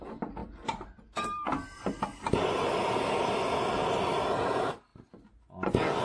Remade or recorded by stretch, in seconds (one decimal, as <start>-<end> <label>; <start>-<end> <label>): 0.0-0.4 remade; 0.4-4.0 recorded; 4.0-4.9 remade; 4.9-6.0 recorded